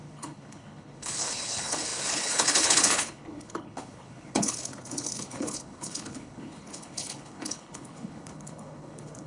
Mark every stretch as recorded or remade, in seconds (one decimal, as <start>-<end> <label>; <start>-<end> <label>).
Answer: 0.0-9.3 remade